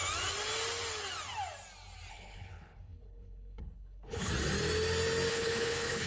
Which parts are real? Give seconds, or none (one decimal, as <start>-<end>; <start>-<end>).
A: 0.0-2.1; 4.3-5.3